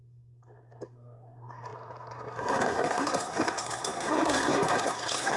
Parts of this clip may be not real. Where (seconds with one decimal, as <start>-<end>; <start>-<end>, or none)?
0.0-5.4